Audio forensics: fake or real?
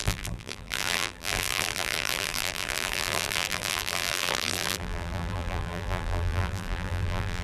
fake